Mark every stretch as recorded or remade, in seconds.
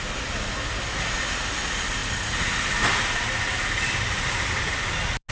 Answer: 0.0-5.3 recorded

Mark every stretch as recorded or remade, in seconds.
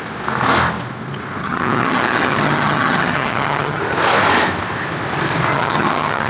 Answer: 0.0-1.4 recorded; 1.4-3.8 remade; 3.8-5.5 recorded; 5.5-6.3 remade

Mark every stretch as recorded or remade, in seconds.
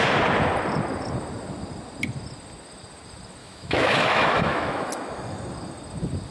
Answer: 0.0-3.4 recorded; 3.4-4.9 remade; 4.9-6.3 recorded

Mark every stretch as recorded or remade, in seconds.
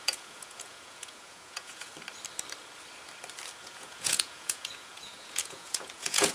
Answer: 0.0-1.9 remade; 1.9-3.6 recorded; 3.6-6.3 remade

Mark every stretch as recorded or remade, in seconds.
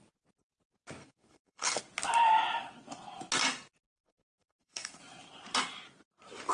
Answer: 0.0-1.0 recorded; 1.0-1.8 remade; 1.8-3.9 recorded; 3.9-5.0 remade; 5.0-6.5 recorded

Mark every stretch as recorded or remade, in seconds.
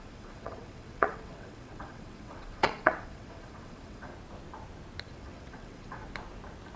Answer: 0.0-4.1 remade; 4.1-5.0 recorded; 5.0-6.0 remade; 6.0-6.8 recorded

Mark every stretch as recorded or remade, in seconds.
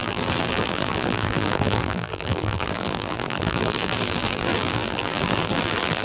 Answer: 0.0-6.0 remade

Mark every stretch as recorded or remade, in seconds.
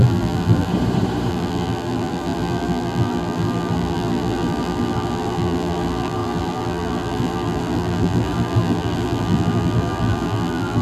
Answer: 0.0-0.7 remade; 0.7-1.3 recorded; 1.3-10.8 remade